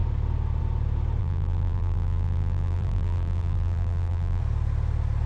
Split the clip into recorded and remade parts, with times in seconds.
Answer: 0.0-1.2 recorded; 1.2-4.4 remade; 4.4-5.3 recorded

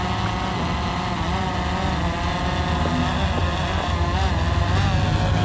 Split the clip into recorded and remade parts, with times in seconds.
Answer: 0.0-5.4 recorded

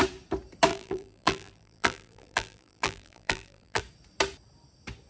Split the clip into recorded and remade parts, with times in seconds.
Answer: 0.0-0.7 recorded; 0.7-3.8 remade; 3.8-5.1 recorded